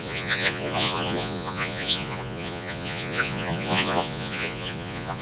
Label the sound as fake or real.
fake